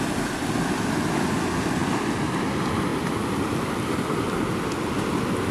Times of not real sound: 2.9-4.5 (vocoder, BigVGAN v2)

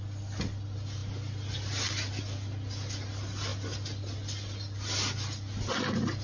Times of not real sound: none

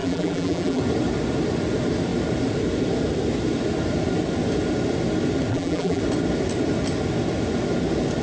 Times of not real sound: 0.0-0.8 (vocoder, BigVGAN v2); 5.5-6.0

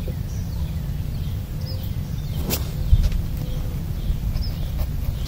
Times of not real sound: none